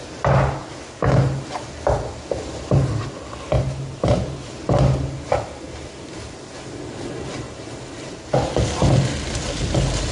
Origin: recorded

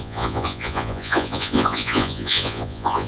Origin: remade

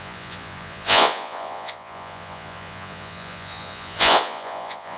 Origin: remade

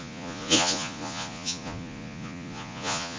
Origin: remade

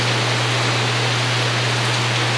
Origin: recorded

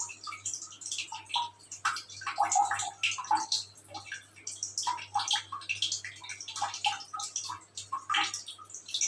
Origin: recorded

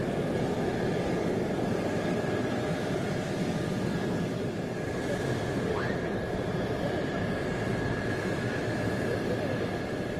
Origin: recorded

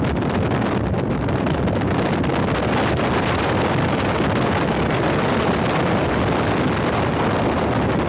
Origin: recorded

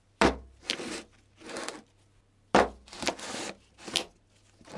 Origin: recorded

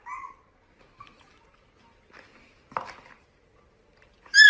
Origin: recorded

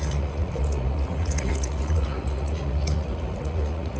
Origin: remade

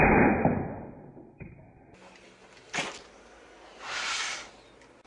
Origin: recorded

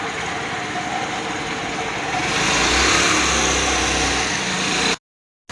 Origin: recorded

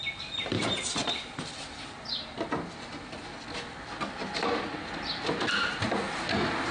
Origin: recorded